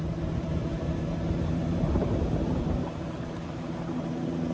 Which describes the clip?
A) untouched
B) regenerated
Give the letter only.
B